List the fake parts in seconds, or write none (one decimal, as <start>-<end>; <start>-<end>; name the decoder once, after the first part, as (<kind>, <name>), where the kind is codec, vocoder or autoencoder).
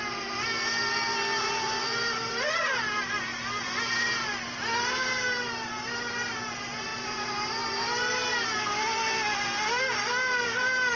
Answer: 0.0-11.0 (vocoder, BigVGAN v2)